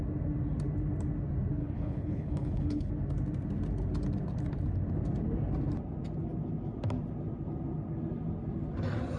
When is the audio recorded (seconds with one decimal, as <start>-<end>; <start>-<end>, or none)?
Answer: 0.0-1.6; 2.9-9.2